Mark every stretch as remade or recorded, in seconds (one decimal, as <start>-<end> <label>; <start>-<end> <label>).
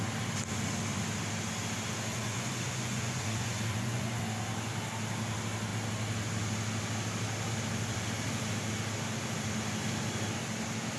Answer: 0.0-2.1 recorded; 2.1-4.2 remade; 4.2-11.0 recorded